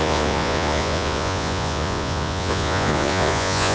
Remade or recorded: remade